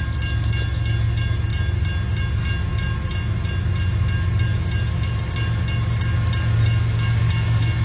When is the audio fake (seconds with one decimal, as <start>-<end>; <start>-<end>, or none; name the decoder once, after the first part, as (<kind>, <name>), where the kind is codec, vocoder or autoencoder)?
none